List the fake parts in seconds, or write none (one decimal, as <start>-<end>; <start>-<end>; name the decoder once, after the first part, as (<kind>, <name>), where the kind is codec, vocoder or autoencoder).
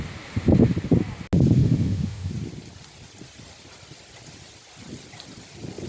1.6-2.3 (autoencoder, DAC-VAE)